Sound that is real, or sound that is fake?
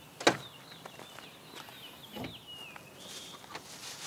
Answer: real